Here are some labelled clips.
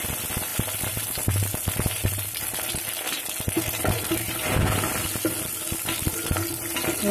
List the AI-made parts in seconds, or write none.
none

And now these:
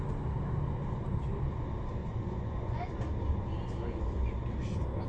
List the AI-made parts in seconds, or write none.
2.0-2.9 (vocoder, Vocos)

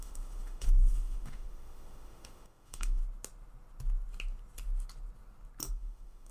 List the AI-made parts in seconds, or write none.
0.0-3.0 (autoencoder, DAC-VAE); 5.7-6.3

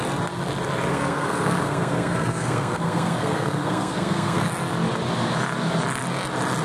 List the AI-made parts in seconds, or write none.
0.9-4.5 (codec, SNAC)

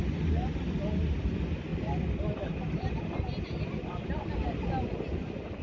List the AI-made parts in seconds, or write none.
none